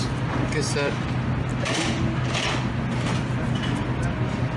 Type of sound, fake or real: real